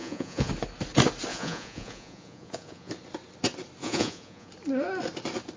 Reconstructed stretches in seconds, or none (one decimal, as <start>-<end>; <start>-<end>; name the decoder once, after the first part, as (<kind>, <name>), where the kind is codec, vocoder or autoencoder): 0.0-0.5 (vocoder, Vocos); 1.3-2.9; 3.8-4.5